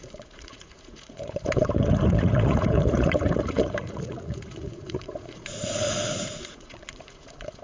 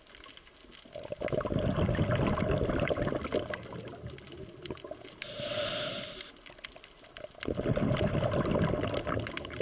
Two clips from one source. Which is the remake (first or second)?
first